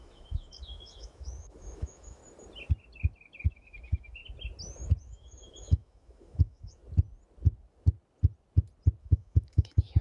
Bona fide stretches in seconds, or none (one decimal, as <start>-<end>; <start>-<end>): 2.2-3.5; 4.2-5.0; 6.8-9.0